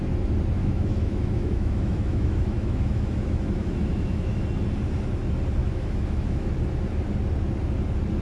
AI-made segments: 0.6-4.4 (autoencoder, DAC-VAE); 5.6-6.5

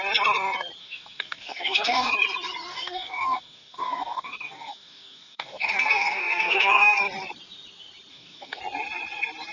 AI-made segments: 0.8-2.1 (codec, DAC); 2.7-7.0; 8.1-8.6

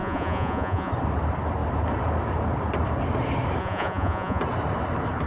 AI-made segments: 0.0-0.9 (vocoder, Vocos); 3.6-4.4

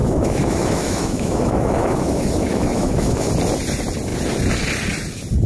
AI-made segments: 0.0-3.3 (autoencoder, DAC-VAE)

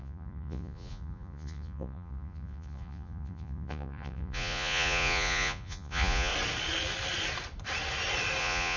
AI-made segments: 0.0-6.3 (vocoder, Vocos); 8.4-8.8

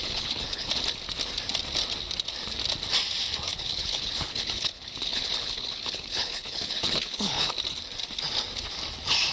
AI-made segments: 0.0-0.7 (codec, HILCodec); 3.5-7.5